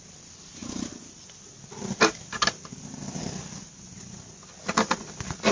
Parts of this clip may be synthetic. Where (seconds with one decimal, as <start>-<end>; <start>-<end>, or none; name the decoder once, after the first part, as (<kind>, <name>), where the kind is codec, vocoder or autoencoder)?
none